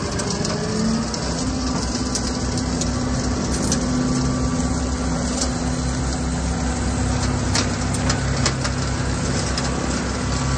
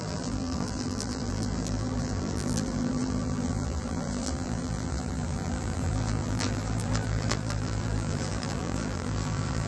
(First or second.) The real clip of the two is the first